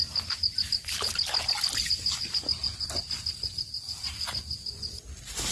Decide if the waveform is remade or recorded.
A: recorded